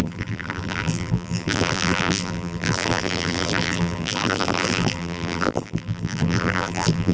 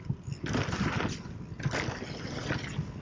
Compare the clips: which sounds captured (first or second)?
second